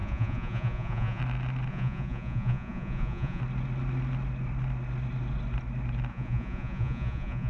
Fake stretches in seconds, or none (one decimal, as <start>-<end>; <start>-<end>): 0.0-1.2; 1.7-3.4; 6.1-7.5